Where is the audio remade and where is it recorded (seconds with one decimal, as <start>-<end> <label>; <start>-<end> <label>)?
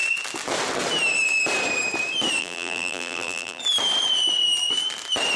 0.0-2.4 recorded; 2.4-3.6 remade; 3.6-5.4 recorded